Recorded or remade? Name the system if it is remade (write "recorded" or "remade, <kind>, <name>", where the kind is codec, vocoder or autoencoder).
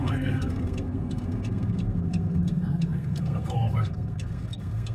remade, codec, SNAC